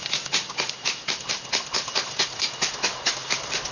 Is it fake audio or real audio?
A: real